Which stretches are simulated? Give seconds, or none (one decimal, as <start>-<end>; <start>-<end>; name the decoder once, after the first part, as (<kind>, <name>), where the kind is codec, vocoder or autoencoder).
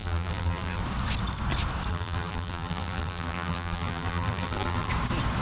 0.0-0.8 (vocoder, BigVGAN v2); 1.9-4.9